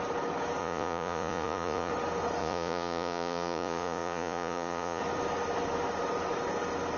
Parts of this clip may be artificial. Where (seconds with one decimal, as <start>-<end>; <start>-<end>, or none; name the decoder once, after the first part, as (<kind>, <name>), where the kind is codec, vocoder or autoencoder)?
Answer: 0.6-1.9 (vocoder, Vocos); 2.4-5.0